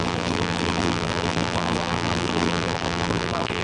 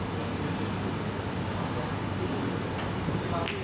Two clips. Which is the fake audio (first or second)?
first